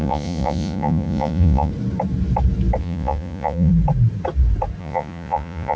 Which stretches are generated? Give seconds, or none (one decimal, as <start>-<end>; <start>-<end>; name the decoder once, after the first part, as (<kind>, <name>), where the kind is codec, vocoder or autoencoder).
0.0-1.7 (vocoder, Vocos); 2.8-3.7; 4.8-5.8

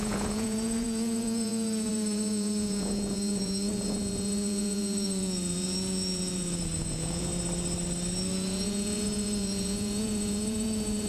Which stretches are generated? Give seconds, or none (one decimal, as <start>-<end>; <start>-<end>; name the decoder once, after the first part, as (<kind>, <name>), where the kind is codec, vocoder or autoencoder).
0.0-7.3 (vocoder, Vocos); 8.3-11.1

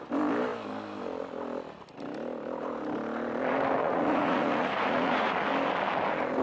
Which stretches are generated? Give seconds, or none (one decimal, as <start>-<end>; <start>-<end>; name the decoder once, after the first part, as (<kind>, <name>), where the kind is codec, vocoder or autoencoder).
3.8-5.3 (vocoder, Vocos)

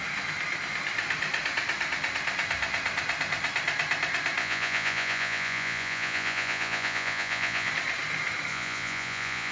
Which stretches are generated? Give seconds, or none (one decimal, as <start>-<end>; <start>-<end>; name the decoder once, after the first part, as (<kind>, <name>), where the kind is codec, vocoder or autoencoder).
4.4-7.7 (vocoder, Vocos); 8.5-9.5

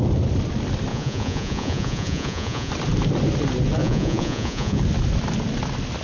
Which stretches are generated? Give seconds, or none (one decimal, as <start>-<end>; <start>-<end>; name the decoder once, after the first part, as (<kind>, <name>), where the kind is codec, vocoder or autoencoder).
0.9-2.7 (vocoder, Vocos); 3.8-4.8

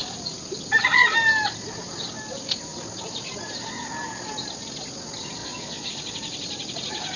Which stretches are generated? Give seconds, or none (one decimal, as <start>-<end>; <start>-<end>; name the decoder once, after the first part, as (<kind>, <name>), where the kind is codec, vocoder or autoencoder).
5.4-5.9 (vocoder, Vocos)